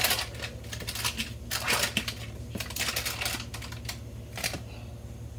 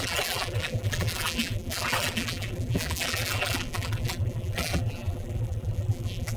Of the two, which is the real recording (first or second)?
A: first